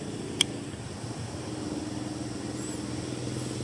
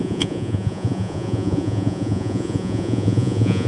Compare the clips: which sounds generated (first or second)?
second